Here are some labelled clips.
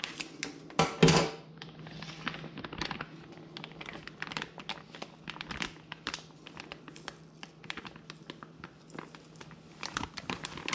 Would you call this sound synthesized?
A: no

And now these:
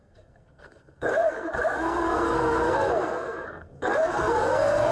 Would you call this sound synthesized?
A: yes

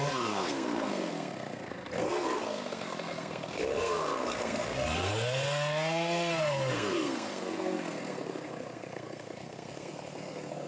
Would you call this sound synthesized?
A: yes